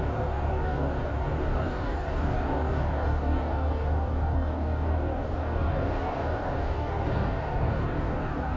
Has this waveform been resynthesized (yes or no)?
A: yes